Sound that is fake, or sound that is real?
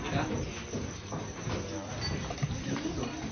real